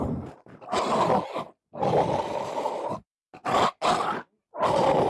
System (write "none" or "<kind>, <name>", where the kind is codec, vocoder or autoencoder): none